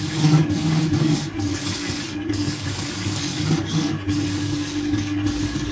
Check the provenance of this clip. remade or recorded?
remade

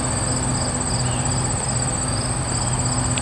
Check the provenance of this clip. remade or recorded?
recorded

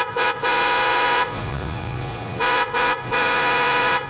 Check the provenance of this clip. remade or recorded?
remade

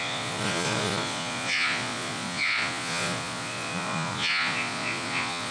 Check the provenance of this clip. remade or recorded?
remade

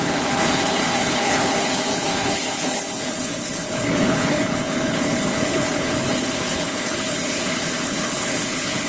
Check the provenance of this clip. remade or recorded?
remade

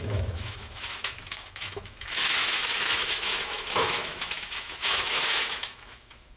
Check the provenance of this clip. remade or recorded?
remade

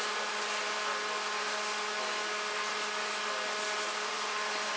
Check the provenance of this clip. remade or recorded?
recorded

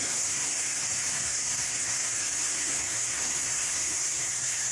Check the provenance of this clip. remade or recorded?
remade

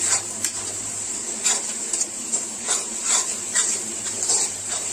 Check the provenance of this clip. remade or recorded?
remade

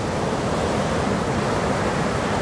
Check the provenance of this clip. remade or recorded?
recorded